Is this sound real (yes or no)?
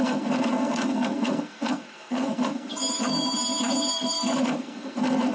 no